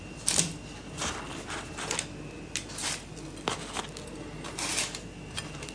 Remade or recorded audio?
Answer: recorded